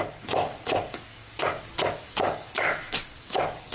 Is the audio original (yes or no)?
no